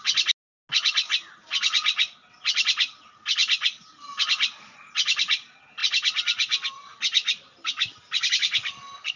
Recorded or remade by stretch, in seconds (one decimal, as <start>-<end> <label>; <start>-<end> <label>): 0.0-9.2 recorded